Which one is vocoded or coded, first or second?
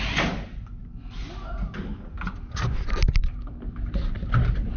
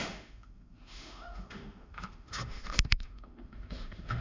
second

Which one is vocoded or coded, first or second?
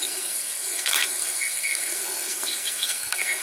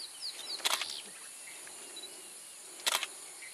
first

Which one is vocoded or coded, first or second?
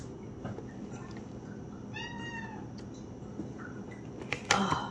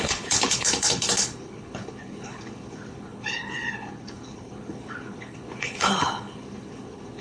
second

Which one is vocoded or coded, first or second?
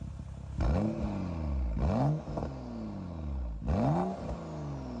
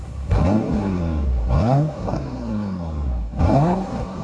second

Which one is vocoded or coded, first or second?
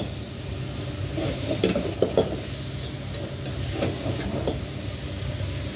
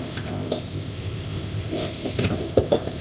second